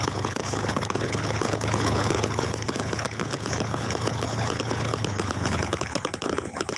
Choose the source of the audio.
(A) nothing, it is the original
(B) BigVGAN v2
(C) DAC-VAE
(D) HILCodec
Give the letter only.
D